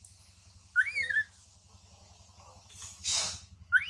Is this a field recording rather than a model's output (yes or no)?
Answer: no